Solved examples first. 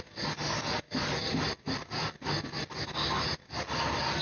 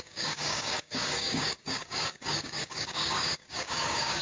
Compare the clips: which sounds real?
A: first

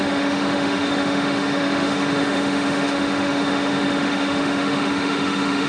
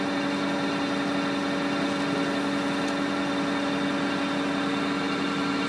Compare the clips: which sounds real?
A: second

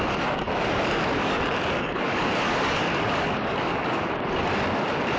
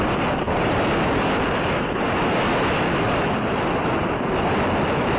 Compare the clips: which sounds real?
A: second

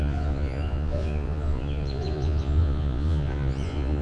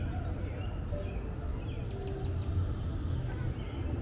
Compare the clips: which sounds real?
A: second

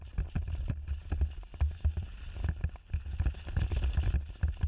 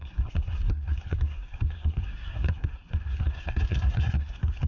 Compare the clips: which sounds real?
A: first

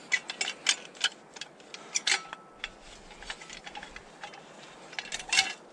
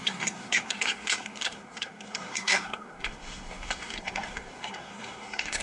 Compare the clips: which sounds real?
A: first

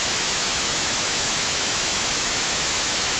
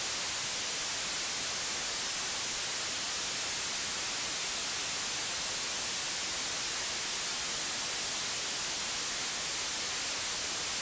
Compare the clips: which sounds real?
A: second